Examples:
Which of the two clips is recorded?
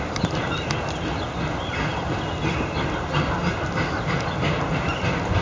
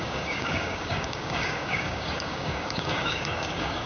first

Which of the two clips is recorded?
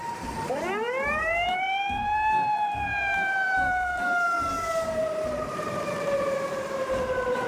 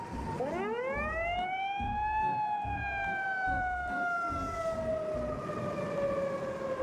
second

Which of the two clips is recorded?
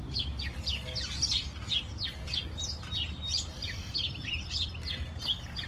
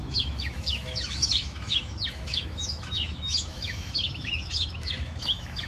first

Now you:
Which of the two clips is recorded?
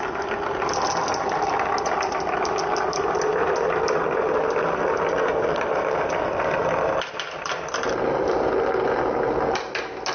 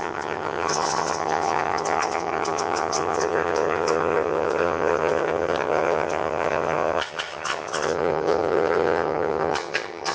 first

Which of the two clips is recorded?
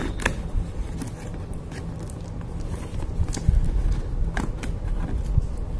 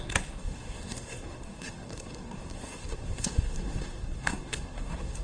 first